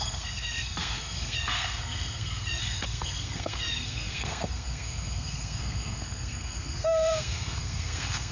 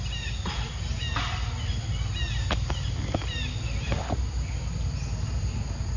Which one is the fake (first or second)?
first